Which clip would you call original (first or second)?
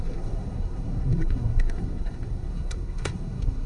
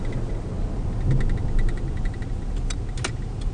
second